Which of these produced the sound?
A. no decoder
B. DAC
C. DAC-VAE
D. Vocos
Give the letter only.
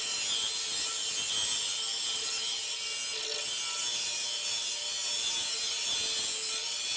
A